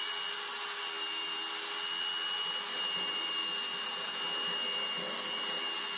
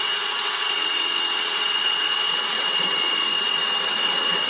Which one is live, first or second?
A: first